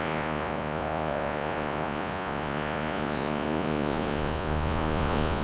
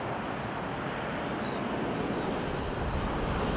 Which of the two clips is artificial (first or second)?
first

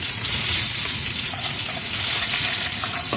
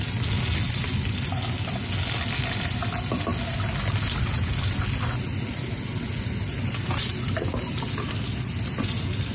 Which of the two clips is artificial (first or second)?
first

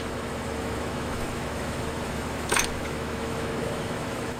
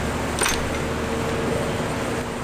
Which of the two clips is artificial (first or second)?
first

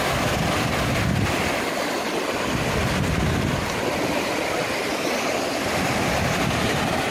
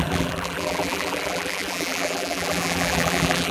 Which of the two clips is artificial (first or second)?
second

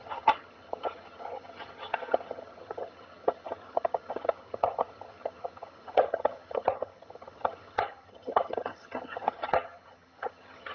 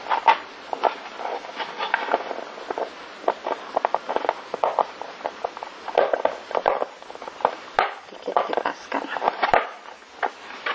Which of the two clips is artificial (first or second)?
first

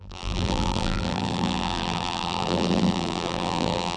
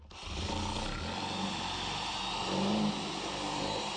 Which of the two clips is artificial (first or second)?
first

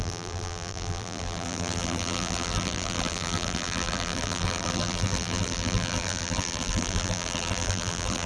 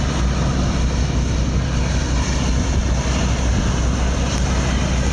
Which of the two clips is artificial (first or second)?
first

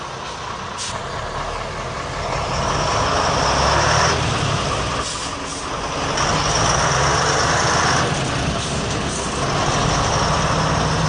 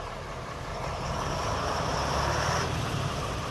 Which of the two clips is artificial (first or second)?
second